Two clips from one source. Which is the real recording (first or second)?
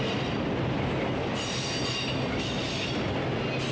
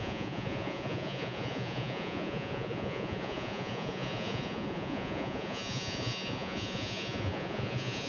first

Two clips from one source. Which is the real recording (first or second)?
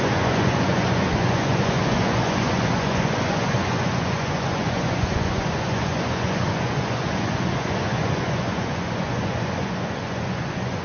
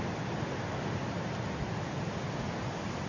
second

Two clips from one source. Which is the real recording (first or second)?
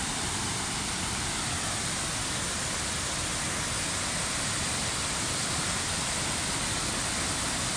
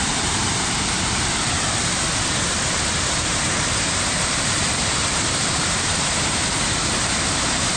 first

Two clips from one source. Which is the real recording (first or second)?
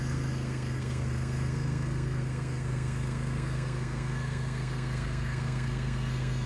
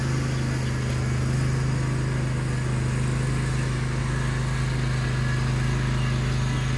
second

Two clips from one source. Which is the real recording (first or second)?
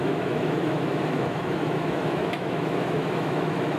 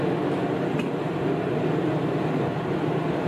second